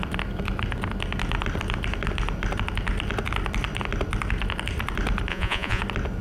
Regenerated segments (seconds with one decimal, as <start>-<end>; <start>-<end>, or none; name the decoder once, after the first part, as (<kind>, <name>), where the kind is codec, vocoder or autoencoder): 5.3-5.8 (vocoder, Vocos)